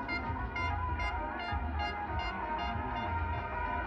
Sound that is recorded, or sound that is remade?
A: recorded